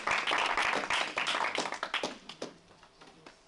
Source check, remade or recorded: remade